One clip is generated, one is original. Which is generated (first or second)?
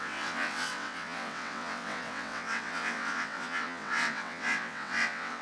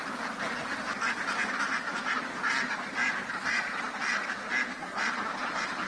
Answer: first